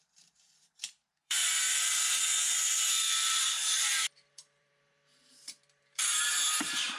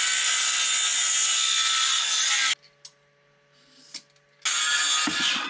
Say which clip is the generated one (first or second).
first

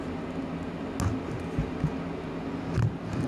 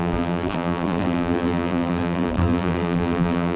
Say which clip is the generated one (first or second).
second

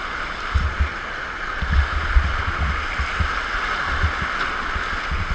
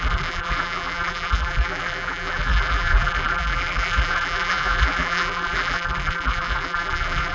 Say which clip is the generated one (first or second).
second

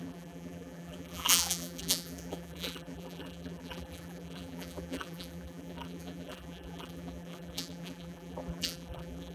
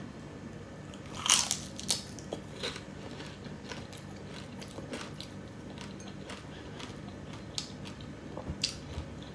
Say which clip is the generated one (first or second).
first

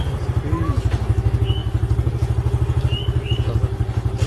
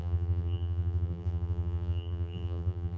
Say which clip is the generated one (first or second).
second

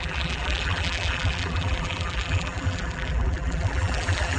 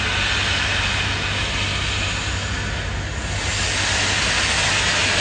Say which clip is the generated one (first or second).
first